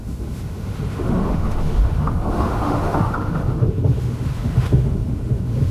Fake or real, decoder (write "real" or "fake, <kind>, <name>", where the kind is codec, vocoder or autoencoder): fake, autoencoder, DAC-VAE